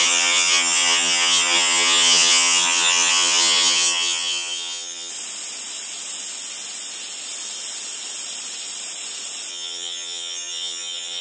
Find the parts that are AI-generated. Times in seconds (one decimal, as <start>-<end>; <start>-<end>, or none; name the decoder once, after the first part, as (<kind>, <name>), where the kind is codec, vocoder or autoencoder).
0.0-5.1 (vocoder, HiFi-GAN); 9.5-11.2